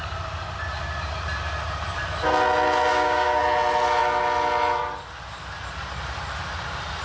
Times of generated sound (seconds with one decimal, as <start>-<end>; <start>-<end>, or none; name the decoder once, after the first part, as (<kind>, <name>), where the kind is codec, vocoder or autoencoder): 2.9-3.4 (codec, DAC)

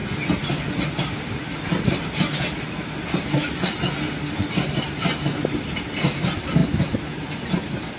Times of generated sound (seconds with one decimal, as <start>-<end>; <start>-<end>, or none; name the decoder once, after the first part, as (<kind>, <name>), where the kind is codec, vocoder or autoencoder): none

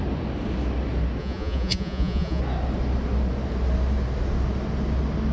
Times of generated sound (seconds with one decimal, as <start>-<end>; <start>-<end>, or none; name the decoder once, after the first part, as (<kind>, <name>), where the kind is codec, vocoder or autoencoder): 1.2-2.4 (vocoder, Vocos)

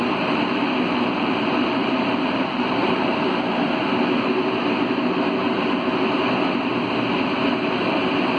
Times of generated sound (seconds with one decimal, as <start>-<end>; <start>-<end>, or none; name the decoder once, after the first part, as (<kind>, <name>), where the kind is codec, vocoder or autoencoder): 0.0-3.1 (vocoder, BigVGAN v2)

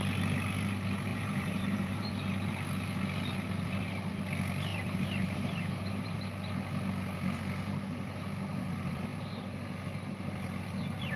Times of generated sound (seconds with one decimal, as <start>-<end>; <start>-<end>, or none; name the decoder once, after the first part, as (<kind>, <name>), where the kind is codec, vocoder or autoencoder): 1.1-2.1 (vocoder, BigVGAN v2); 4.7-6.2